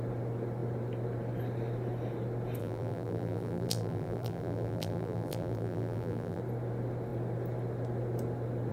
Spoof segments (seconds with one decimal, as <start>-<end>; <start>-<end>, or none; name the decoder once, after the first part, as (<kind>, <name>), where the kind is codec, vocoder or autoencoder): 2.6-6.4 (vocoder, BigVGAN v2)